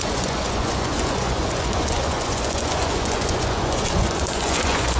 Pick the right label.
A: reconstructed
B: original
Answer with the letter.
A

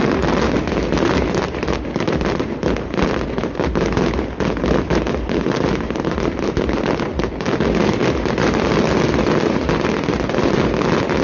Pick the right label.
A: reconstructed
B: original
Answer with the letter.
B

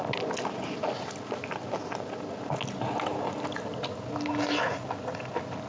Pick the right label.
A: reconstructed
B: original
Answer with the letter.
B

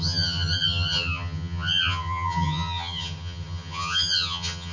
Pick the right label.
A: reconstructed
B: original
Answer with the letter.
A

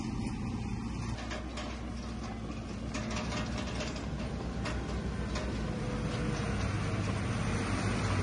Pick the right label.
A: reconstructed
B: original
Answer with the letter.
B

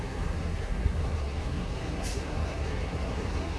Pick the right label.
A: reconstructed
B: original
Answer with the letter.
A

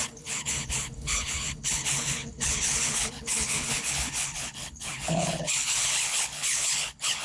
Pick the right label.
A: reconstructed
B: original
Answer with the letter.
A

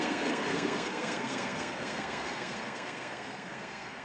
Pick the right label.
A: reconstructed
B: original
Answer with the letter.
A